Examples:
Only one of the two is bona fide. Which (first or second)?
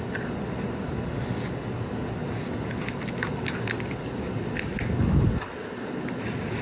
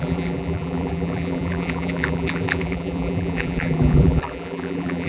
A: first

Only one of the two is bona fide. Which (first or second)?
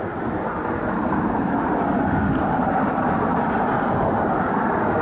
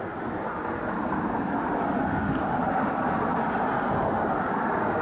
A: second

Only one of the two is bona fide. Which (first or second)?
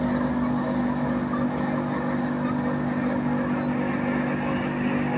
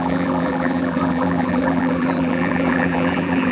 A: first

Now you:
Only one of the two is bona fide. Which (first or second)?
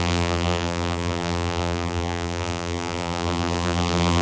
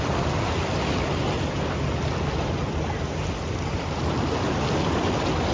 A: second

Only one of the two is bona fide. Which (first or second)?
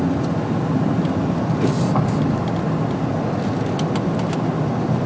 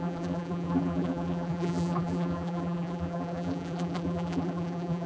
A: first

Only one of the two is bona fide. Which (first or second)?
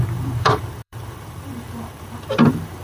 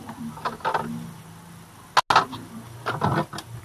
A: second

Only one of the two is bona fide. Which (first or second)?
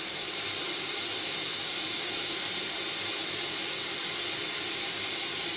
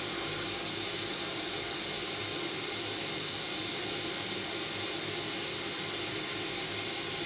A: second